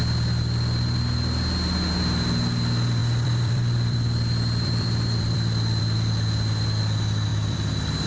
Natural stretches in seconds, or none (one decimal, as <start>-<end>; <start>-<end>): 0.0-3.0; 5.8-7.3